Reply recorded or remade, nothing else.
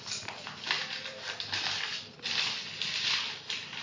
recorded